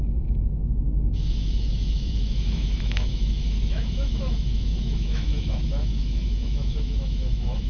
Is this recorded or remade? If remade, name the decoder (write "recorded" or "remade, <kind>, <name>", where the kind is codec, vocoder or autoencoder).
remade, autoencoder, DAC-VAE